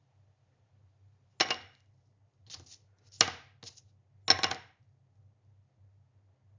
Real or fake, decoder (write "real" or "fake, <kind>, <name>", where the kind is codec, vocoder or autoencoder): real